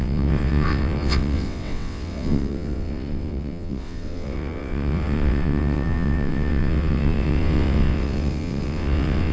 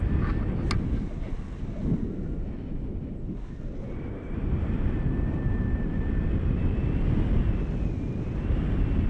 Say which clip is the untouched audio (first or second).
second